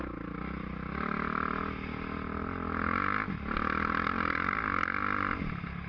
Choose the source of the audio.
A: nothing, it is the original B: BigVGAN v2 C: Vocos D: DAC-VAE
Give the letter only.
A